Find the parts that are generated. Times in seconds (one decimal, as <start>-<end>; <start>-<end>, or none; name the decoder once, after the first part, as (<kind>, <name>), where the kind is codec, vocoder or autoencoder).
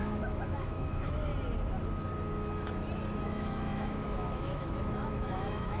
0.0-1.3 (autoencoder, DAC-VAE); 3.2-5.8